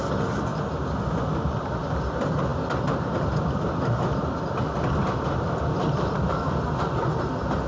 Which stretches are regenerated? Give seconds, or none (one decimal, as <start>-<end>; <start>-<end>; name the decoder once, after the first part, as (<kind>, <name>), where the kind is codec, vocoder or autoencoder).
none